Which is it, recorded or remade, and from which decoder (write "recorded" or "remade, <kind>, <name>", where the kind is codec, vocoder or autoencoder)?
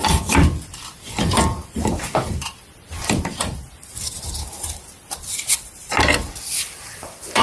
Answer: remade, vocoder, BigVGAN v2